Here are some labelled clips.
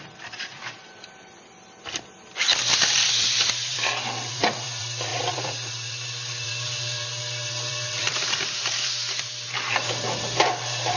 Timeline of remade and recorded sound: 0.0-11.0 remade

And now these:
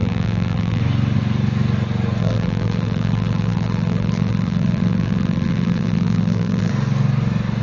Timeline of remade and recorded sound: 0.0-0.8 remade; 0.8-2.2 recorded; 2.2-6.7 remade; 6.7-7.6 recorded

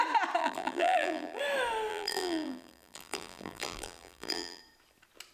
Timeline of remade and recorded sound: 0.0-0.4 recorded; 0.4-1.4 remade; 1.4-1.9 recorded; 1.9-4.6 remade; 4.6-5.3 recorded

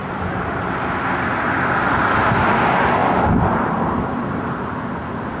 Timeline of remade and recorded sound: 0.0-2.1 remade; 2.1-5.4 recorded